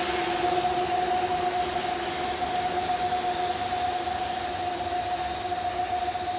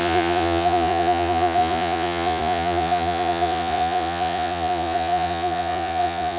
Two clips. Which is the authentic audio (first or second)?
first